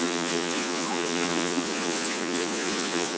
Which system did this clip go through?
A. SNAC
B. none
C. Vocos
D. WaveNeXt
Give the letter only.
C